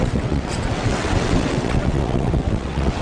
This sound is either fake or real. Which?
fake